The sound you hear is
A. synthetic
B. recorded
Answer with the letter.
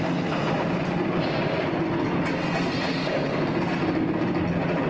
B